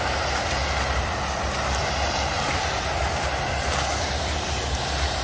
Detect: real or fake real